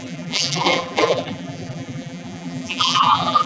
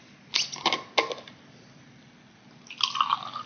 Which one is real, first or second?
second